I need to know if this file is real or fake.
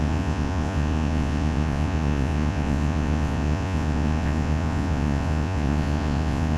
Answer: fake